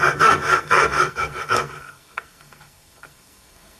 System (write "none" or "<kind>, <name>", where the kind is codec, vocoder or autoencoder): codec, SNAC